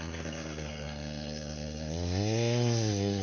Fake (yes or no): yes